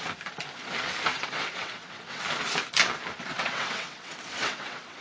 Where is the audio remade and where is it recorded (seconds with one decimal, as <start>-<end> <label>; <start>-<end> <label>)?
0.0-1.1 recorded; 1.1-2.2 remade; 2.2-3.3 recorded; 3.3-5.0 remade